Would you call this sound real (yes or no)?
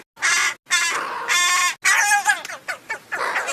yes